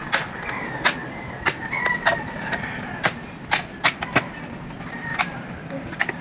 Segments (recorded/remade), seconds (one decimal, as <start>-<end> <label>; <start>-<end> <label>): 0.0-6.2 recorded

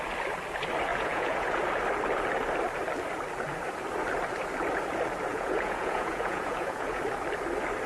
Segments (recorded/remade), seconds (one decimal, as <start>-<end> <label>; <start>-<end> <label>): 0.0-0.9 recorded; 0.9-1.6 remade; 1.6-5.3 recorded; 5.3-7.0 remade; 7.0-7.9 recorded

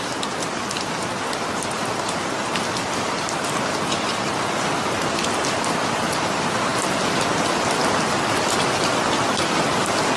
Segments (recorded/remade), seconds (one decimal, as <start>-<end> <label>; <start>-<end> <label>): 0.0-10.2 recorded

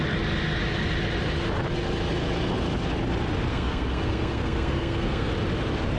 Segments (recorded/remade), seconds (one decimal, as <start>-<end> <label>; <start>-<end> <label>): 0.0-3.5 recorded; 3.5-5.3 remade; 5.3-6.0 recorded

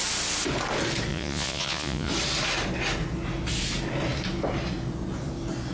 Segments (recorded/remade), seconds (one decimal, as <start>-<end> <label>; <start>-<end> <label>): 0.0-1.1 recorded; 1.1-2.1 remade; 2.1-5.7 recorded

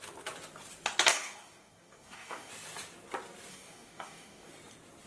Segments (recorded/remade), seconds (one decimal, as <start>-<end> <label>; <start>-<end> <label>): 0.0-1.1 recorded; 1.1-2.5 remade; 2.5-3.5 recorded; 3.5-4.5 remade; 4.5-5.1 recorded